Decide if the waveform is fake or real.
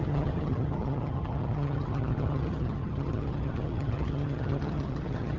fake